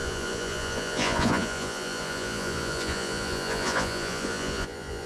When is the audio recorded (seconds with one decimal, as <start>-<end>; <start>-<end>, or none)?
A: none